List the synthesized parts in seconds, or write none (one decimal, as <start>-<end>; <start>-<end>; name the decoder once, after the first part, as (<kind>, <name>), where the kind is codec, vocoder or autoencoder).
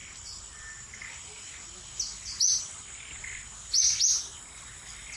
2.6-3.4 (vocoder, BigVGAN v2)